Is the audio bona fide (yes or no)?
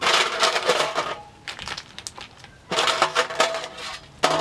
yes